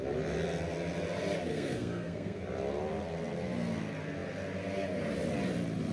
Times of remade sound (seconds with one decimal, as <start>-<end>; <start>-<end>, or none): 1.5-2.4